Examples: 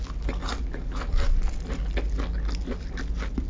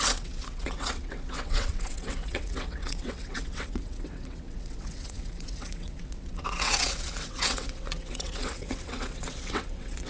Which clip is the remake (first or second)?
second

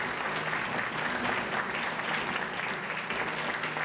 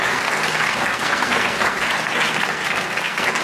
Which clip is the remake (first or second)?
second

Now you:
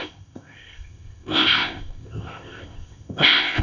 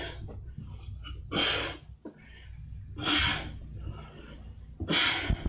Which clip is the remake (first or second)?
first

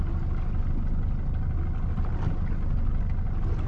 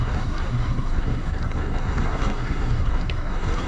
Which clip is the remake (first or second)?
second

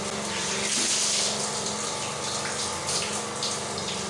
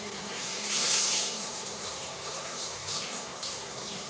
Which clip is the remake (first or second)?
second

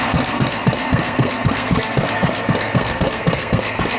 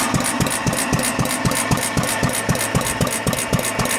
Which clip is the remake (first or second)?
first